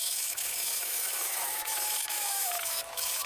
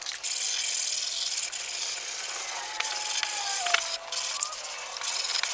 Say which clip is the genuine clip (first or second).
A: second